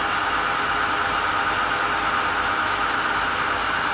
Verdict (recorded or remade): recorded